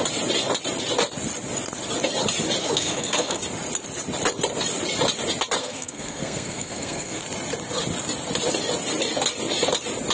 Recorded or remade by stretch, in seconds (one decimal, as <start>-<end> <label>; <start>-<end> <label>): 0.0-2.6 recorded; 2.6-3.4 remade; 3.4-5.6 recorded; 5.6-7.2 remade; 7.2-10.1 recorded